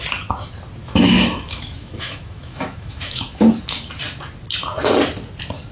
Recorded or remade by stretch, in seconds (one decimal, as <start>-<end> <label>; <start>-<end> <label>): 0.0-0.8 recorded; 0.8-3.5 remade; 3.5-5.7 recorded

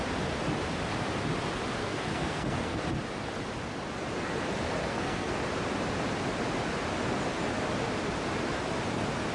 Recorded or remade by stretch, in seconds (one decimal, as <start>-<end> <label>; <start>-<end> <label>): 0.0-1.8 recorded; 1.8-2.8 remade; 2.8-4.8 recorded; 4.8-5.4 remade; 5.4-9.3 recorded

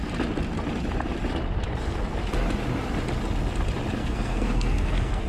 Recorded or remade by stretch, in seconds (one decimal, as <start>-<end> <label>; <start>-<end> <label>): 0.0-4.0 recorded; 4.0-5.3 remade

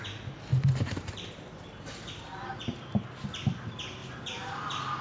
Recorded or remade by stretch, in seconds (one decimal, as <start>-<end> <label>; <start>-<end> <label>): 0.0-0.5 recorded; 0.5-2.7 remade; 2.7-4.0 recorded; 4.0-4.6 remade; 4.6-5.0 recorded

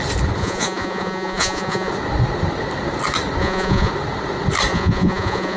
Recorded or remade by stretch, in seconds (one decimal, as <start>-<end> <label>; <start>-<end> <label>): 0.0-0.4 recorded; 0.4-1.9 remade; 1.9-3.4 recorded; 3.4-3.9 remade; 3.9-4.7 recorded; 4.7-5.6 remade